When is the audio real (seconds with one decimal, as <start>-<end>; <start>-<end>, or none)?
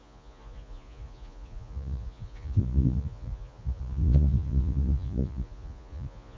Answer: none